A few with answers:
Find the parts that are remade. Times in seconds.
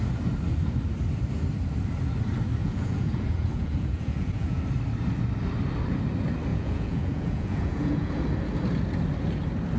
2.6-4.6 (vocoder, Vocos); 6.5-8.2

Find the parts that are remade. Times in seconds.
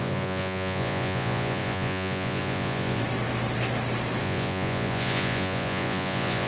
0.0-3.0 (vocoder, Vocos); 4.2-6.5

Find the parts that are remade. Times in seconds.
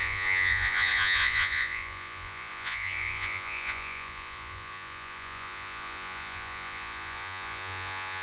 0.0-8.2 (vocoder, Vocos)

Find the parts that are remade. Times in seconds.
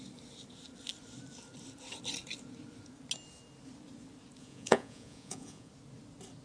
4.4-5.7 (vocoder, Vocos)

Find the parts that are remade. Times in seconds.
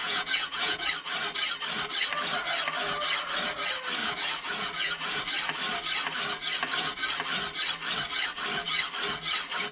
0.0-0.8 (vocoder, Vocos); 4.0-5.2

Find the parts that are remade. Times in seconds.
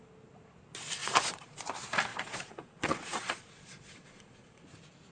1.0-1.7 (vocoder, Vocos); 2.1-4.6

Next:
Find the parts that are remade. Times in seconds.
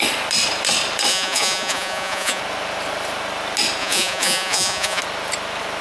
1.1-2.4 (vocoder, Vocos); 3.8-5.0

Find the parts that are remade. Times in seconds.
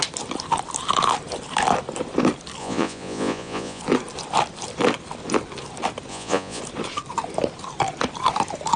2.6-3.8 (vocoder, Vocos); 6.1-6.6